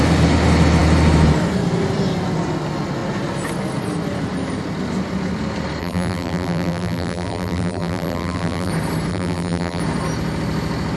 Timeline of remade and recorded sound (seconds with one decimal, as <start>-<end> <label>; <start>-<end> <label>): 0.0-5.8 recorded; 5.8-8.7 remade; 8.7-9.1 recorded; 9.1-9.8 remade; 9.8-11.0 recorded